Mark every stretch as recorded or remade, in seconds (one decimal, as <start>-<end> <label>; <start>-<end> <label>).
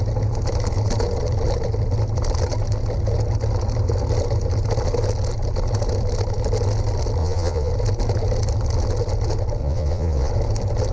0.0-7.2 recorded; 7.2-7.7 remade; 7.7-9.6 recorded; 9.6-10.3 remade; 10.3-10.9 recorded